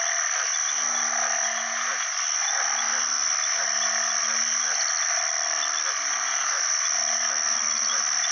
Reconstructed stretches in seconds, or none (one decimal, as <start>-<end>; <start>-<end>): none